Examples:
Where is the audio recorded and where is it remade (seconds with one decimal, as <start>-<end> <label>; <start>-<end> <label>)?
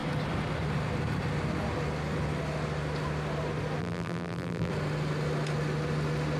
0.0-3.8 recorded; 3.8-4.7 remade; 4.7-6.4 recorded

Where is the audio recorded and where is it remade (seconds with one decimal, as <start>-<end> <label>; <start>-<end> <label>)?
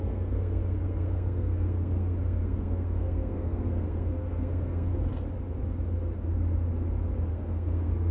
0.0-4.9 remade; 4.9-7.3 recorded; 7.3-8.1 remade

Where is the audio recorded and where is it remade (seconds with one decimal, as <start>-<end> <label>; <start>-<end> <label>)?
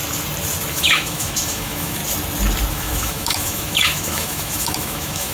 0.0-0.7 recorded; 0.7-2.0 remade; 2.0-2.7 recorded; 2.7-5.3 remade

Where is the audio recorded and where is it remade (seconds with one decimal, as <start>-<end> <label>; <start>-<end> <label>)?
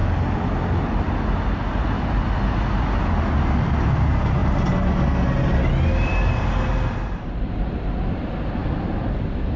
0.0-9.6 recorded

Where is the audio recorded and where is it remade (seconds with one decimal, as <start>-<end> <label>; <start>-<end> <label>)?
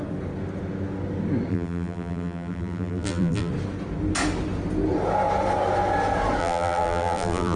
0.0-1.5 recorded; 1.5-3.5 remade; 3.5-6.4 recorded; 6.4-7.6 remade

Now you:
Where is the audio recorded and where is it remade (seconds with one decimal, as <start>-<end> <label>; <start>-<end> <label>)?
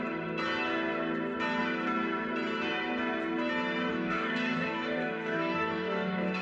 0.0-3.9 recorded; 3.9-6.4 remade